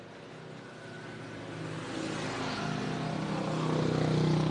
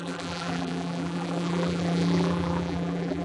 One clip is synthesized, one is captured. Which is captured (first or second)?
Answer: first